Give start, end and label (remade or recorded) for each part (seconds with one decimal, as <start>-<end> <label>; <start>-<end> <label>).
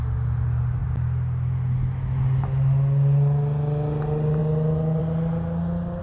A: 0.0-6.0 recorded